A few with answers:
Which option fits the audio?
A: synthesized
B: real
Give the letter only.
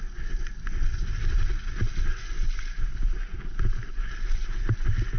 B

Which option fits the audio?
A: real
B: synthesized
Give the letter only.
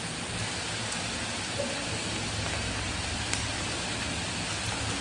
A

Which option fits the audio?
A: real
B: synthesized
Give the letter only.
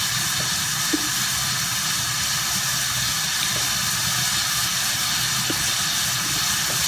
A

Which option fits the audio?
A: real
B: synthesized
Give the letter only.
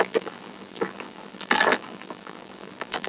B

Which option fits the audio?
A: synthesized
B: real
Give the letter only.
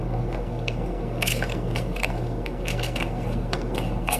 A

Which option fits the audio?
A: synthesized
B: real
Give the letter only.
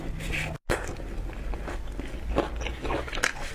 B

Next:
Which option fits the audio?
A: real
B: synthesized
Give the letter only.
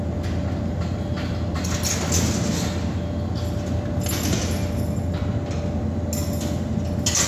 A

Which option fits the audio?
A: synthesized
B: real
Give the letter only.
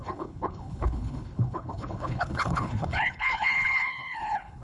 A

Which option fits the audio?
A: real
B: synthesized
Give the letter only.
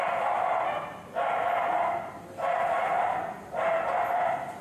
A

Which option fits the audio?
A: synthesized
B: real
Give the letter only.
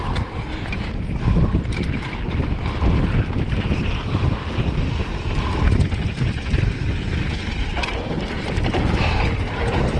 A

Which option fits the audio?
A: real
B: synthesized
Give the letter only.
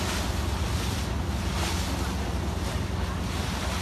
A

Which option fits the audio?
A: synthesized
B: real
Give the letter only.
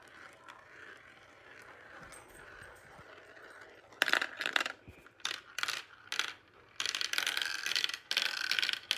B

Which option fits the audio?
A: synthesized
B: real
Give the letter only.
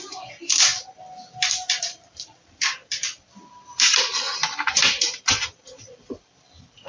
B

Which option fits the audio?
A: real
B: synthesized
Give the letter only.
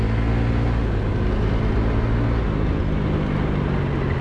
A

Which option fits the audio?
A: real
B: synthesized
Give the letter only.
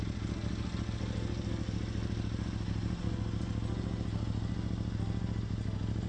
A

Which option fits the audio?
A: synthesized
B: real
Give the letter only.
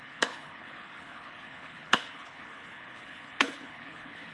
A